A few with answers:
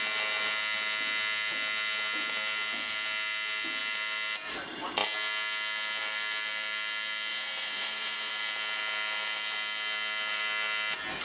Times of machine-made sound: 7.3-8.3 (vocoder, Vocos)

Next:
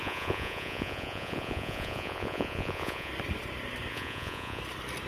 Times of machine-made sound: 0.0-3.1 (vocoder, Vocos); 3.9-4.6

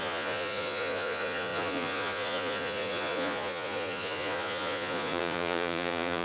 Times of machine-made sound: 0.0-6.2 (vocoder, Vocos)